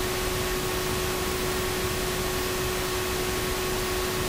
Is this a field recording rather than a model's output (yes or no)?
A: yes